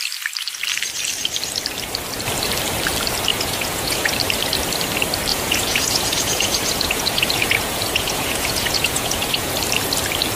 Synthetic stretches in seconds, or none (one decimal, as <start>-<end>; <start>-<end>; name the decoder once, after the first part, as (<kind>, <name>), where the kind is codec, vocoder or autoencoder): 3.3-4.1 (vocoder, Vocos); 5.3-9.5